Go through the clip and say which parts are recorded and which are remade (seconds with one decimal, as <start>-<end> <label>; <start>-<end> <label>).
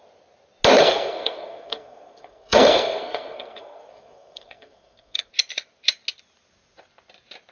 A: 0.0-0.8 recorded; 0.8-5.3 remade; 5.3-7.5 recorded